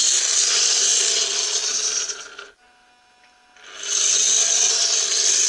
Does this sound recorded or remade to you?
recorded